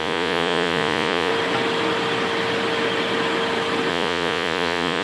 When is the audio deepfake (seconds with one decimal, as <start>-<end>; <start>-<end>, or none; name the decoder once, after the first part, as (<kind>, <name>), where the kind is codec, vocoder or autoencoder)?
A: 0.0-1.3 (vocoder, Vocos); 3.9-5.0